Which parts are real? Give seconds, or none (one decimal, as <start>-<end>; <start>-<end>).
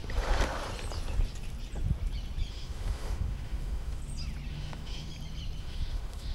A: 0.0-2.5; 4.0-4.5; 5.1-5.6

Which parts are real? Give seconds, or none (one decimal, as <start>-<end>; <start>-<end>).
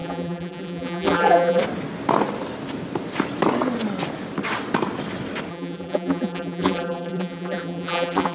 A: 1.6-5.5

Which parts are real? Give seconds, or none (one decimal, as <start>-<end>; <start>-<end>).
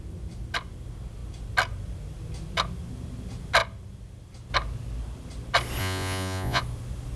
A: 0.0-5.8; 6.6-7.2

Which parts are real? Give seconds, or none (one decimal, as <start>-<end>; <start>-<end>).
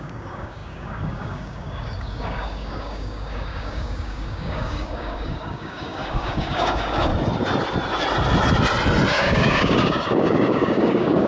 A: 7.1-9.1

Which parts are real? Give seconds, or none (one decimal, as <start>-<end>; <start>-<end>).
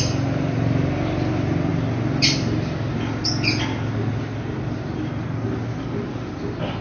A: 0.0-6.8